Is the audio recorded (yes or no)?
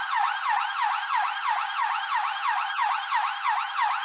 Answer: yes